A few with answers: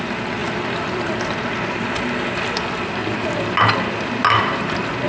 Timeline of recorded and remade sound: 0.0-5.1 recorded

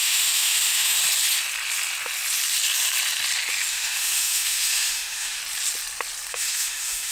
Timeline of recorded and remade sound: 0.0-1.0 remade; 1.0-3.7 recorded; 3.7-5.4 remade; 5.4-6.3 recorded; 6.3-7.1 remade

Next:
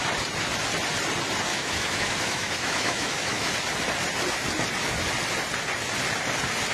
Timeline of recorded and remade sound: 0.0-1.5 recorded; 1.5-3.5 remade; 3.5-6.7 recorded

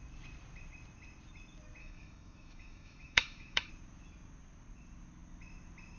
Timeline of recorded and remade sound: 0.0-1.8 recorded; 1.8-3.7 remade; 3.7-6.0 recorded

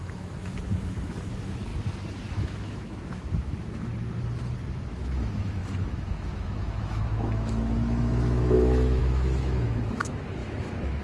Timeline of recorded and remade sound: 0.0-1.7 remade; 1.7-2.3 recorded; 2.3-3.9 remade; 3.9-4.9 recorded; 4.9-11.0 remade